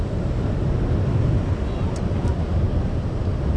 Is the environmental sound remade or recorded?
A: recorded